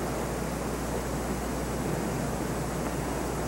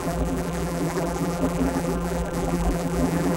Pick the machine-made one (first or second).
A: second